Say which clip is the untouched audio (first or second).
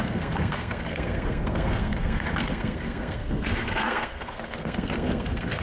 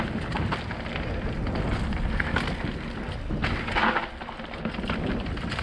second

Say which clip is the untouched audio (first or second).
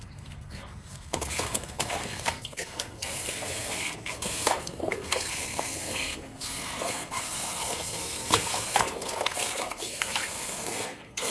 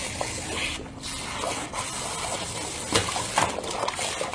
second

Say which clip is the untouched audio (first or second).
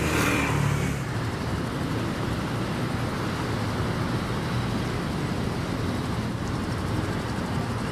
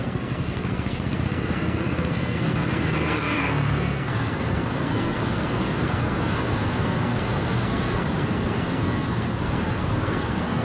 first